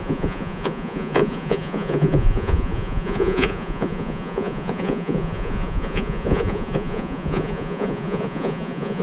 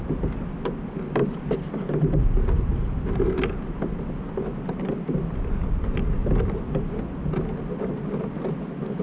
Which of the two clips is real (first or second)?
second